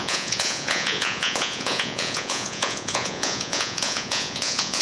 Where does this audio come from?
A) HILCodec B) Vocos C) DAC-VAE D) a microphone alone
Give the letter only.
B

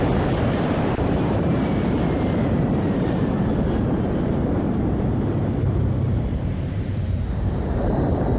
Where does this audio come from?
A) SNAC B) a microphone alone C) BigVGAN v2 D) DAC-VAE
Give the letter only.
C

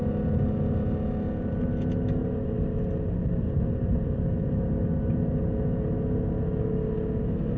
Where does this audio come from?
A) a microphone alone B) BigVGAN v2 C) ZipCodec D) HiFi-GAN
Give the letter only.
A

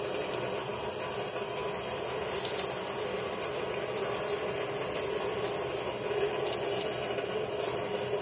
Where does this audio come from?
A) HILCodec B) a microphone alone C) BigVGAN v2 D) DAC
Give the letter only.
B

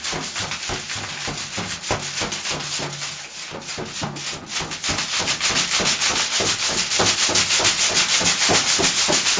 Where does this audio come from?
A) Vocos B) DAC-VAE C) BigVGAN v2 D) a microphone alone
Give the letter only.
D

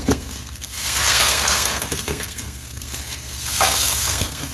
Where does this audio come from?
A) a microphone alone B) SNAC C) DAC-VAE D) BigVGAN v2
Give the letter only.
B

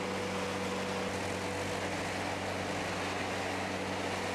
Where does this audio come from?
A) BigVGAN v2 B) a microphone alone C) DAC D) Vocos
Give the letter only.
B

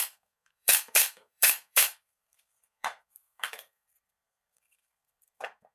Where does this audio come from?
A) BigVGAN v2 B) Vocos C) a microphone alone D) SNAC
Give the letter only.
D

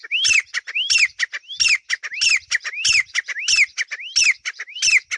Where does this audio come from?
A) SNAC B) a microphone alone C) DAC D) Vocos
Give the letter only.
B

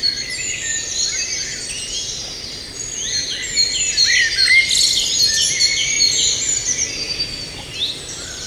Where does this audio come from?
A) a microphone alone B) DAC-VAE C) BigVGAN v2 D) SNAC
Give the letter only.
A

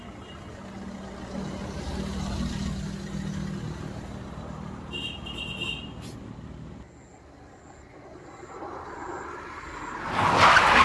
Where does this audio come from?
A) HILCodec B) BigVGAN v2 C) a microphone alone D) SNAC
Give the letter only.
C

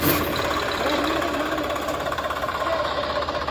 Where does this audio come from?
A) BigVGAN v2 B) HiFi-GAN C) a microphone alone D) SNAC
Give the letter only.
C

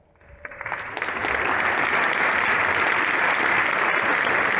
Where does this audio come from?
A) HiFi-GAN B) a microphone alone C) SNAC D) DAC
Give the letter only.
B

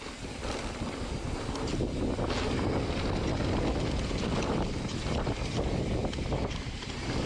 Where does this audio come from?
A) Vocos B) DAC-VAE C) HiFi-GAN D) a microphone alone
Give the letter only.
D